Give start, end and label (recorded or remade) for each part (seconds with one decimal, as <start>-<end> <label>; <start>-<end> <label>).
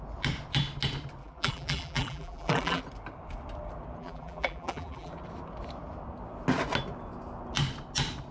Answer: 0.0-1.2 recorded; 1.2-2.8 remade; 2.8-4.0 recorded; 4.0-5.1 remade; 5.1-8.3 recorded